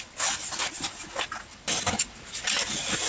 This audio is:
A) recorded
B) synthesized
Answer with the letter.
A